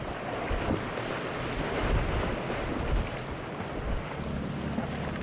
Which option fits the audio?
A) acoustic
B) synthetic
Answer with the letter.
A